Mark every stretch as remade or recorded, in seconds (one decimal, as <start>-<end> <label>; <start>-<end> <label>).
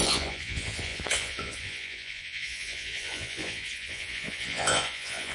0.0-5.3 remade